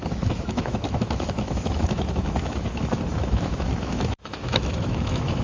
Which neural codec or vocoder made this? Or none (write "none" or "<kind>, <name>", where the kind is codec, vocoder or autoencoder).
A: autoencoder, DAC-VAE